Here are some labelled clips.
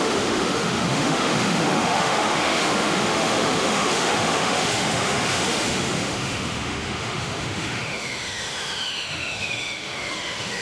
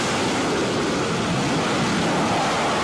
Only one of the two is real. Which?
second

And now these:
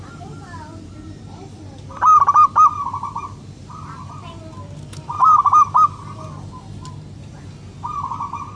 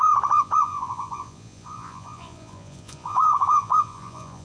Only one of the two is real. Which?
first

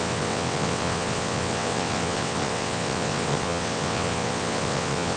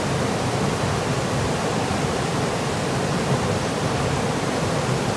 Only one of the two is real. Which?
second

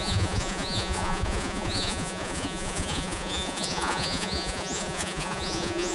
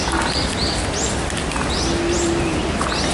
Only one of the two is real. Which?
second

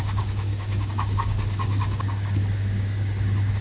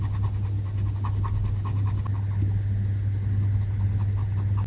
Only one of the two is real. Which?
second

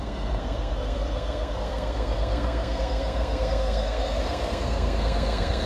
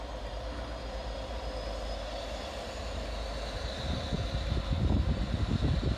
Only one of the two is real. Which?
second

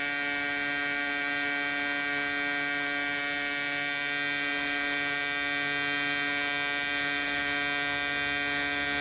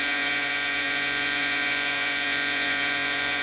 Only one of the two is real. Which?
first